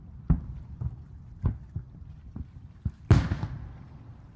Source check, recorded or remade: recorded